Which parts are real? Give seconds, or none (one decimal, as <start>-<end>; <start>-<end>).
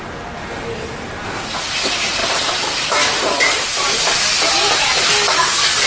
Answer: 0.0-2.2; 4.5-5.9